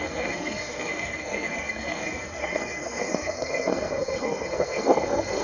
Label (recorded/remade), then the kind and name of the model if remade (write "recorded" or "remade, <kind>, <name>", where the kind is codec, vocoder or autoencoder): remade, codec, SNAC